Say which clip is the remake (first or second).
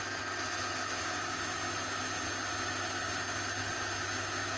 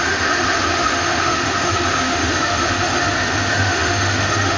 second